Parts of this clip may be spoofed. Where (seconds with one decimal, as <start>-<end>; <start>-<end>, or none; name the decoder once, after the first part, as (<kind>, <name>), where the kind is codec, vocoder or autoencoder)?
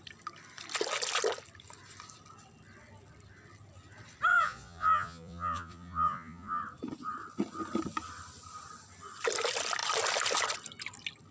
4.3-6.6 (vocoder, Vocos)